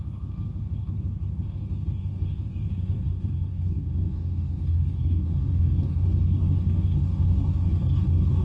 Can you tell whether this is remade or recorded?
remade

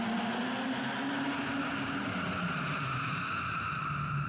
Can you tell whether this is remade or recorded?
recorded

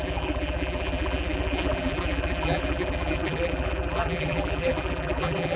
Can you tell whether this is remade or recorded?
remade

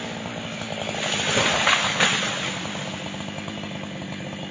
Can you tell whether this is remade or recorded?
recorded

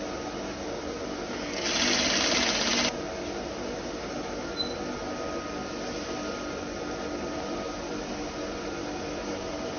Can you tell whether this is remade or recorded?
recorded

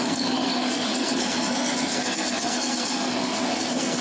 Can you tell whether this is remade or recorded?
remade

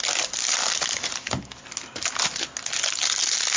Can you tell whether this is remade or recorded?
recorded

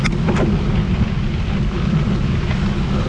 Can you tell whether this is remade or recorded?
recorded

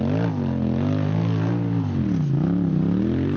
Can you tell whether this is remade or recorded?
recorded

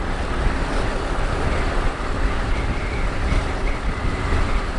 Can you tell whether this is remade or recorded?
remade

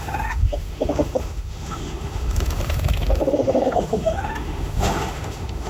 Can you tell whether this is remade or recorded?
remade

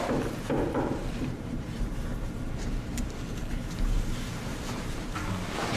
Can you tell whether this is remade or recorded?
remade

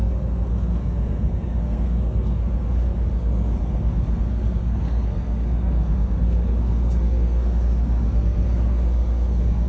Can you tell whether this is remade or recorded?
remade